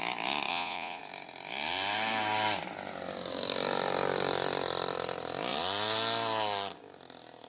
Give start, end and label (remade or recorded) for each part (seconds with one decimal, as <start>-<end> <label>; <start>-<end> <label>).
0.0-0.5 recorded; 0.5-1.0 remade; 1.0-7.5 recorded